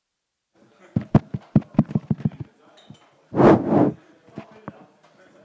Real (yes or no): yes